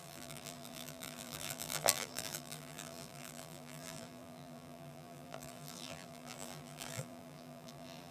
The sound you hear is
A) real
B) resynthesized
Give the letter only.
B